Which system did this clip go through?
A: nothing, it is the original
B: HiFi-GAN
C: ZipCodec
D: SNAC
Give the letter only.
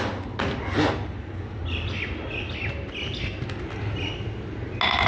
A